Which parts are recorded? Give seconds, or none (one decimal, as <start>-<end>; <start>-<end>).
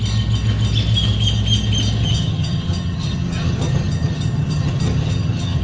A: 0.0-2.0